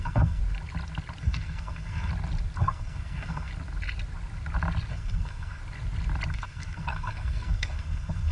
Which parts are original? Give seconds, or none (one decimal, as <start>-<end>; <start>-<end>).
0.4-1.2; 2.1-2.6; 3.5-4.9; 5.6-6.3